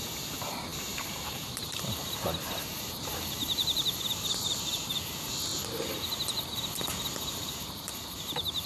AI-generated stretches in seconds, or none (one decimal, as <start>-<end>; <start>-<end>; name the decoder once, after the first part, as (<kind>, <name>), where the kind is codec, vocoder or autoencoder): 0.0-5.5 (vocoder, BigVGAN v2); 7.3-8.7